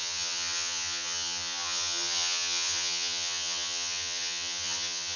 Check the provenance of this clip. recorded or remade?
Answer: remade